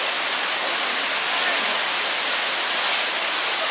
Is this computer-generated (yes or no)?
no